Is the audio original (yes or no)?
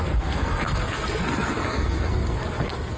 no